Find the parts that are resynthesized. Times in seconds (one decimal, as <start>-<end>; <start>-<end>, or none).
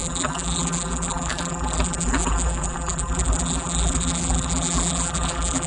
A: 0.0-5.7